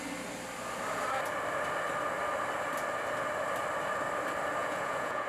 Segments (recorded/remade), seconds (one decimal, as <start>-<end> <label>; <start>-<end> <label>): 0.0-4.6 recorded; 4.6-5.3 remade